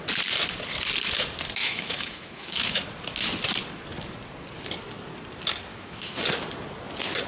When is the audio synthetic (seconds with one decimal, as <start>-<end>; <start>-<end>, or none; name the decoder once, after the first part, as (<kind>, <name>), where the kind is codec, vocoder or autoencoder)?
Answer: 1.6-2.8 (autoencoder, DAC-VAE); 5.7-6.2